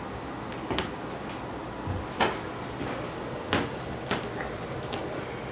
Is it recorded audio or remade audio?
recorded